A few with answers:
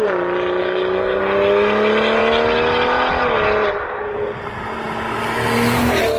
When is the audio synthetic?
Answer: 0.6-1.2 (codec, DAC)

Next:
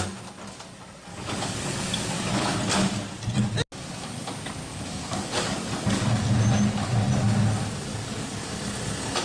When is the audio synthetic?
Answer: 1.1-2.6 (codec, DAC); 4.7-6.1; 7.9-8.5

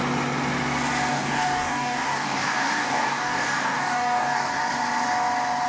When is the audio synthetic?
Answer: 1.1-4.5 (codec, DAC)

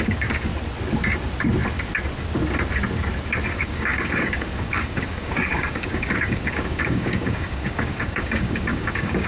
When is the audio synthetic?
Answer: 0.0-0.5 (codec, DAC); 3.5-9.3

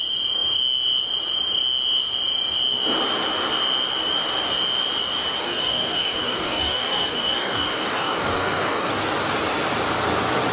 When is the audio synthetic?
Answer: 5.4-8.9 (codec, DAC)

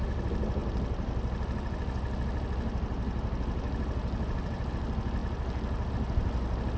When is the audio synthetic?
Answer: none

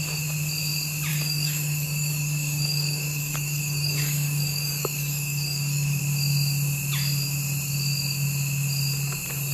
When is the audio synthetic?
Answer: 1.1-6.0 (codec, DAC)

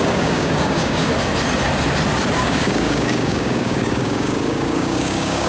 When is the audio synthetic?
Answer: 0.0-1.1 (codec, DAC); 2.4-5.5